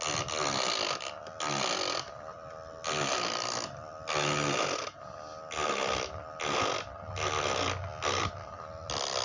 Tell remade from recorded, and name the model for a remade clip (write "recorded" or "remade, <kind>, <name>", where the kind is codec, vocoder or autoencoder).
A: recorded